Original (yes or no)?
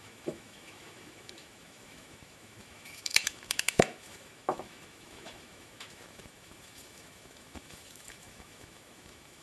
no